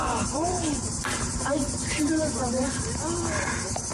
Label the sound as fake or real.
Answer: fake